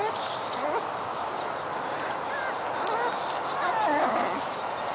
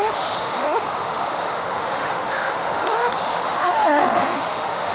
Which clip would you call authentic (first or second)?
first